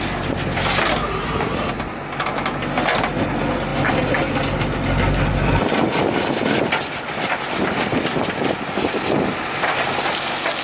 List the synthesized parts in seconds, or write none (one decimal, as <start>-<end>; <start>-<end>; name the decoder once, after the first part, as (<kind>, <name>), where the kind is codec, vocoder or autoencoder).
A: none